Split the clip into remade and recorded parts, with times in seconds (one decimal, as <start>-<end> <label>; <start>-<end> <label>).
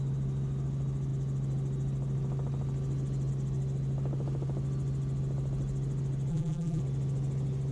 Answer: 0.0-6.3 recorded; 6.3-6.8 remade; 6.8-7.7 recorded